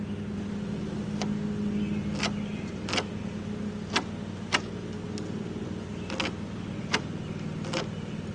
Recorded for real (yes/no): yes